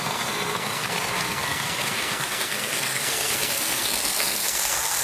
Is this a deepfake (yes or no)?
yes